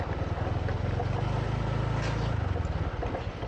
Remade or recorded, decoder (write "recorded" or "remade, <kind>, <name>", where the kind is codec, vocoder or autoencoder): recorded